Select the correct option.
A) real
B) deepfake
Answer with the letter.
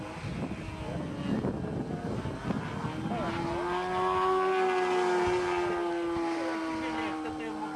A